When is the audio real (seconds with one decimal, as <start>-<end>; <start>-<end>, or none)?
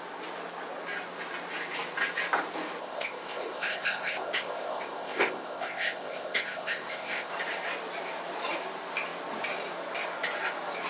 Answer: 0.0-2.8; 7.3-10.9